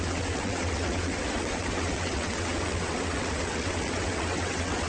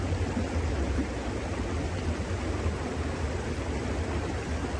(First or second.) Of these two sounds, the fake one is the first